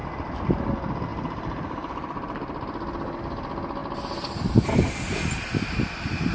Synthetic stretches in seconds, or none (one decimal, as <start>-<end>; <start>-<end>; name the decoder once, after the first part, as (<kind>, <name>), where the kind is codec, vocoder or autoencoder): 0.0-0.7 (vocoder, BigVGAN v2); 1.1-3.2; 3.8-5.4